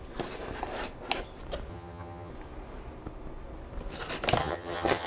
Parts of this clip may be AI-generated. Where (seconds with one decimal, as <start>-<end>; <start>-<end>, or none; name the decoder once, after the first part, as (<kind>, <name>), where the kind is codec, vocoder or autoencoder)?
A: 1.7-2.3 (vocoder, HiFi-GAN); 4.4-5.1